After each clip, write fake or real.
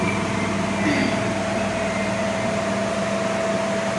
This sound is real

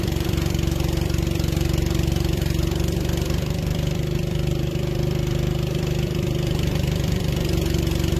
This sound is fake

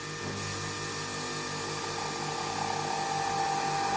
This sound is real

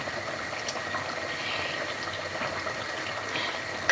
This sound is real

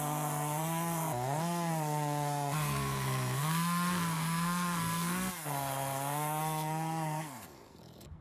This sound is fake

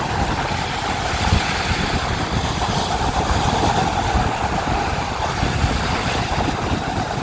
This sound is real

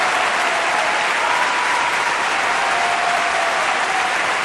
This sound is real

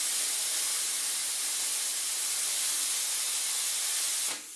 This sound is real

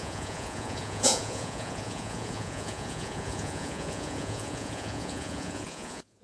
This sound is fake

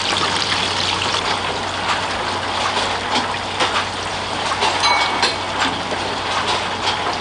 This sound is real